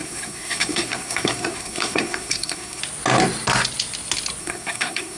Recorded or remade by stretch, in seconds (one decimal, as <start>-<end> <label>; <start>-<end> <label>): 0.0-2.8 remade; 2.8-4.4 recorded; 4.4-5.2 remade